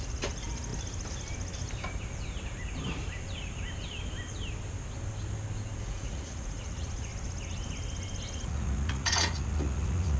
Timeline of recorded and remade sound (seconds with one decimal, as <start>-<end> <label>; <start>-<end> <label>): 0.0-0.7 remade; 0.7-5.8 recorded; 5.8-7.1 remade; 7.1-8.3 recorded; 8.3-10.2 remade